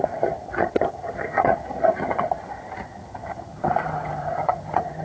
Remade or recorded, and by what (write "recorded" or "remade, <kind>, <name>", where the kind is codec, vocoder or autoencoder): remade, vocoder, HiFi-GAN